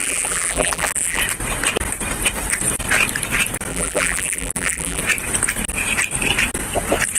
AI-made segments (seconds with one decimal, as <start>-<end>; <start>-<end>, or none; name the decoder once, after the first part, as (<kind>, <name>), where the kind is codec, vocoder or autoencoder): 0.0-1.2 (vocoder, BigVGAN v2); 3.7-5.0